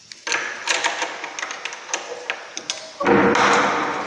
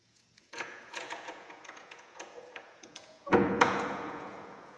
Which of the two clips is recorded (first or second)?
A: first